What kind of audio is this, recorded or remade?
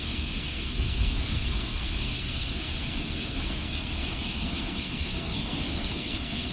remade